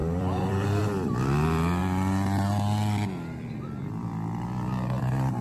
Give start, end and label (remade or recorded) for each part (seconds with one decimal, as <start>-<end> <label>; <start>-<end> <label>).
0.0-0.8 remade; 0.8-1.8 recorded; 1.8-5.0 remade; 5.0-5.4 recorded